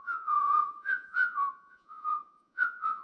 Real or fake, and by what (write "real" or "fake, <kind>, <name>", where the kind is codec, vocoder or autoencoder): fake, vocoder, Vocos